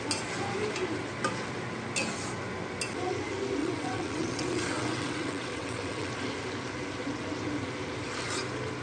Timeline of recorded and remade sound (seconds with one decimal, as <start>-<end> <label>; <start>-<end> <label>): 0.0-3.6 recorded; 3.6-6.1 remade; 6.1-8.8 recorded